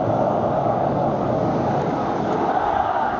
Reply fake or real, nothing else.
fake